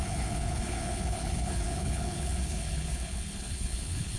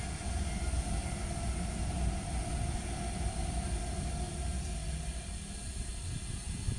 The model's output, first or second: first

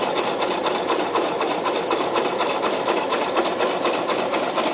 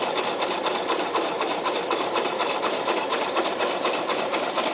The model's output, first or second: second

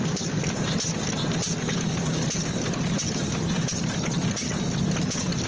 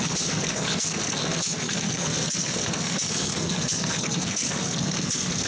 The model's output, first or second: second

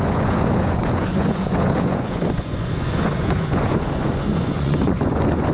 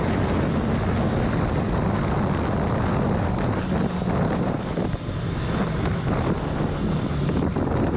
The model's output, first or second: first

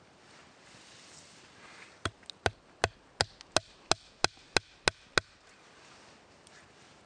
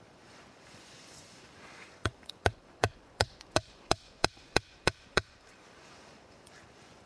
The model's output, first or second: second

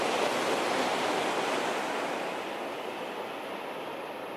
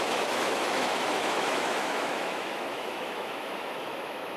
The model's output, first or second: second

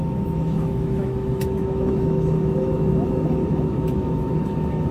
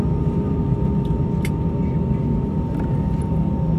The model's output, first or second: first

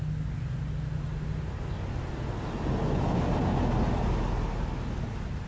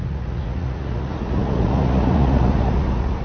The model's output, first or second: second